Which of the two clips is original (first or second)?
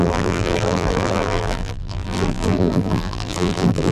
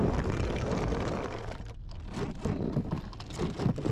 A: second